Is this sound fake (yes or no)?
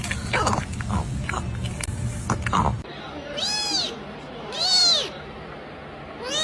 no